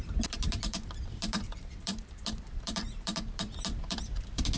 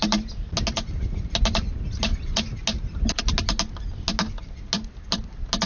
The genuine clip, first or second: second